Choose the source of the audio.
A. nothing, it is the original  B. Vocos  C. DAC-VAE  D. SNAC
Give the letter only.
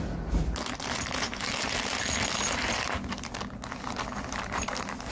A